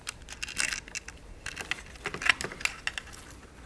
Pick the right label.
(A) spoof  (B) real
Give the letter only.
B